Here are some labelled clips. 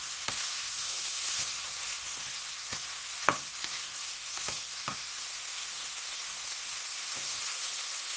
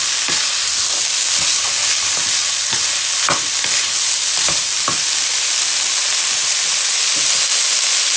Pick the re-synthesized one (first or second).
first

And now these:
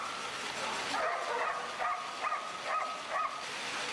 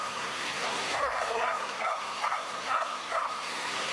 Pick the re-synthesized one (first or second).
second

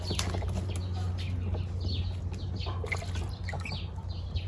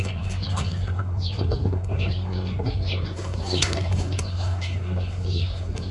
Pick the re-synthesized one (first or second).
second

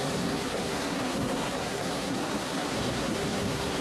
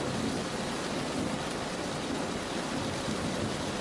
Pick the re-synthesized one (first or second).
first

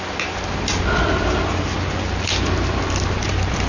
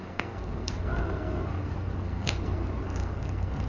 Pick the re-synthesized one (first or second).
second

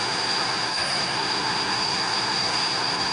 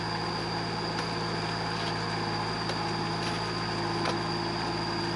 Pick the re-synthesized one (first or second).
first